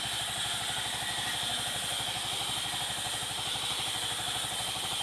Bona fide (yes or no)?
yes